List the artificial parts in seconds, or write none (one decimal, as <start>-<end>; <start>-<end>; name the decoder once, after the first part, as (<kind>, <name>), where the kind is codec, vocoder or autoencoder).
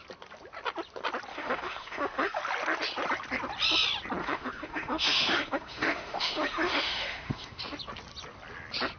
1.3-2.4 (autoencoder, DAC-VAE); 4.2-7.6